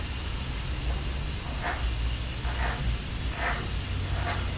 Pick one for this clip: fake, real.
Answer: real